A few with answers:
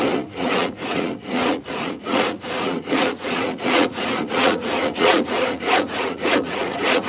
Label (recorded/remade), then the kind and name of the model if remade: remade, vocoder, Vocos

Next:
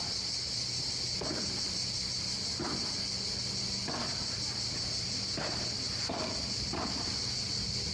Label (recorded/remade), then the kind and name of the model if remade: recorded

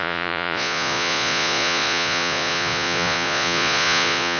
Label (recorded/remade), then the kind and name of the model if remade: remade, vocoder, Vocos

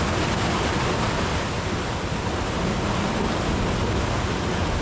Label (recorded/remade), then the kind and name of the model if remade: recorded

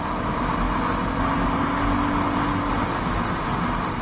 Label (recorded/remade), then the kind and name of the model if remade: recorded